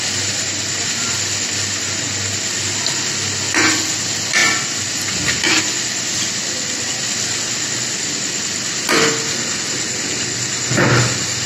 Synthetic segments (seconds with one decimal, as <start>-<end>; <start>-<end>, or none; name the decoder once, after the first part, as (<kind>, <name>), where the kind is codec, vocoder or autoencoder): none